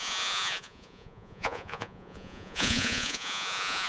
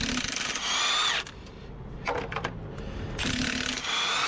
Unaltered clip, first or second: second